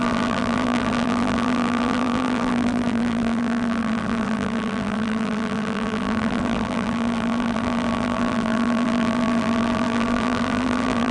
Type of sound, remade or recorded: remade